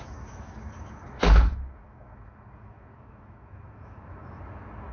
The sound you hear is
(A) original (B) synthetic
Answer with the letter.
B